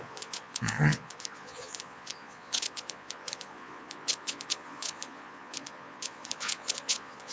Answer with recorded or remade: remade